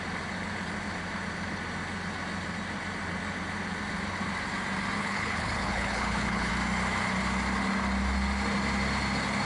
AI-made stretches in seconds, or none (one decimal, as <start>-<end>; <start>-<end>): 5.0-6.5